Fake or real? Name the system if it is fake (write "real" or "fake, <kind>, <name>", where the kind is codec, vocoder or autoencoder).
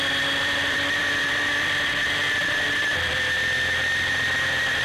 fake, vocoder, BigVGAN v2